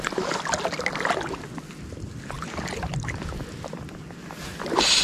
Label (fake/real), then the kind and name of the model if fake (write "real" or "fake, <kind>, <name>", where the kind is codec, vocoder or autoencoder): real